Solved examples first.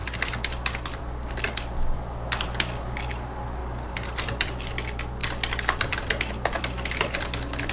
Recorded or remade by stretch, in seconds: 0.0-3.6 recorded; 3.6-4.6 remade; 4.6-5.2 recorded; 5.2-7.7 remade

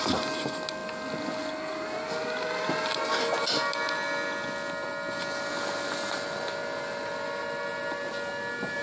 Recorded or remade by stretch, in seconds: 0.0-8.8 recorded